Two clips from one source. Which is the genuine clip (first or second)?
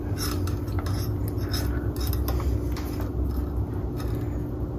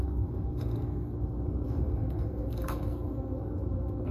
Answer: first